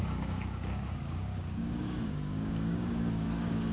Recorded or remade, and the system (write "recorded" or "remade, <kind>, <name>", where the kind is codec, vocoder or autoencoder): remade, codec, DAC